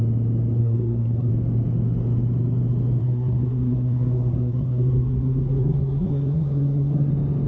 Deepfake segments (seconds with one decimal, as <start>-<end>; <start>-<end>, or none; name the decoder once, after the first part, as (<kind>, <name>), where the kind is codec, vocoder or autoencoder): 0.6-1.3 (codec, SNAC); 3.0-7.1